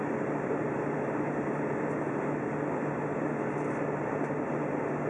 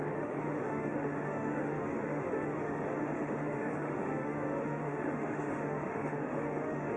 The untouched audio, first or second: first